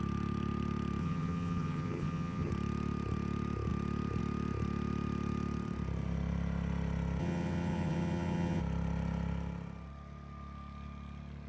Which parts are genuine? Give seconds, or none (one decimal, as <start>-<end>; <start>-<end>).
0.0-1.0; 2.5-7.2; 8.6-11.5